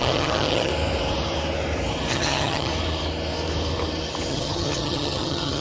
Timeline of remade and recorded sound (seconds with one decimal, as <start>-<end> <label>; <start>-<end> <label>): 0.0-0.7 remade; 0.7-2.1 recorded; 2.1-2.7 remade; 2.7-4.3 recorded; 4.3-5.6 remade